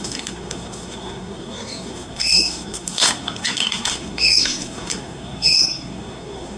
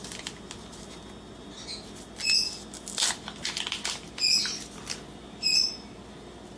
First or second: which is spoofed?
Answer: first